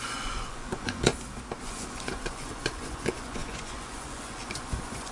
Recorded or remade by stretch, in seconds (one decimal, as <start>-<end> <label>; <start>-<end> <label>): 0.0-1.1 remade; 1.1-1.6 recorded; 1.6-5.1 remade